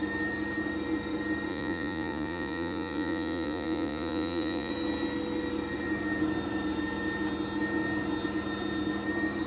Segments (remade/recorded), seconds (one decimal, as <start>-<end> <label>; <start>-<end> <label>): 0.0-1.5 recorded; 1.5-4.7 remade; 4.7-9.5 recorded